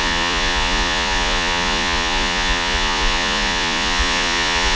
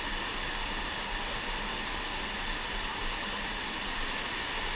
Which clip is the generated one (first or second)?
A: first